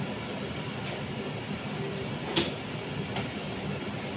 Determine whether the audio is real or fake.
real